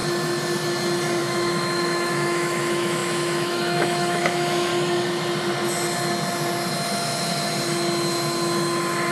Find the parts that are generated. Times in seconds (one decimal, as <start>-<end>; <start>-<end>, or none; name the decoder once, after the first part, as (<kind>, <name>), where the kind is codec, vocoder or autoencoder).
1.2-4.7 (autoencoder, DAC-VAE)